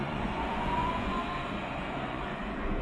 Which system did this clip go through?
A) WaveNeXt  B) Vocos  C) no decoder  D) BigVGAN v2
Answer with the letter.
B